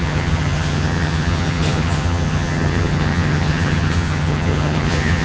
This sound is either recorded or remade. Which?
remade